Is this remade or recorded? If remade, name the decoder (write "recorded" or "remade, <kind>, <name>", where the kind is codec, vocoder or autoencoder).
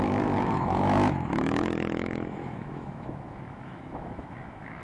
remade, autoencoder, DAC-VAE